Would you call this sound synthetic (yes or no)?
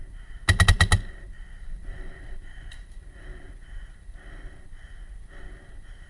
no